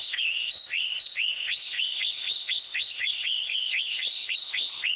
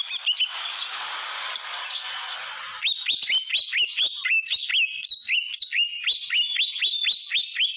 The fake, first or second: first